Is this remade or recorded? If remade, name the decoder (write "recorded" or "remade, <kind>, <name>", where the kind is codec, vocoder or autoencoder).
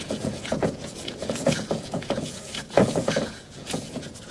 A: remade, vocoder, Vocos